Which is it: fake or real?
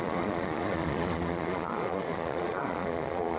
fake